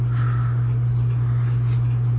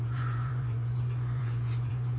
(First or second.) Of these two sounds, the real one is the first